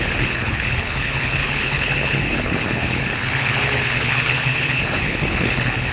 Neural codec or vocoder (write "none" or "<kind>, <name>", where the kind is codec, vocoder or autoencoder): codec, HILCodec